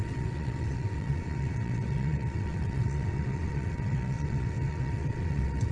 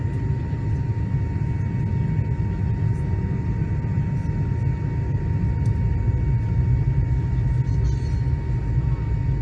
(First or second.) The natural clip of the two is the second